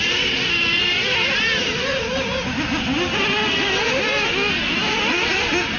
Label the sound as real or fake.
real